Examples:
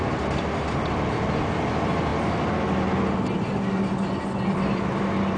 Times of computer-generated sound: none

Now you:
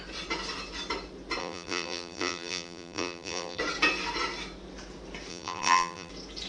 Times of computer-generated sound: 1.4-3.6 (vocoder, BigVGAN v2); 5.3-6.1

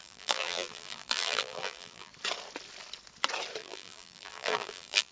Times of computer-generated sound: 0.0-2.1 (vocoder, BigVGAN v2); 3.6-5.1

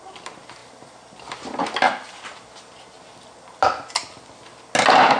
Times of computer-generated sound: none